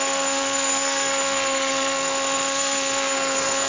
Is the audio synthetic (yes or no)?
yes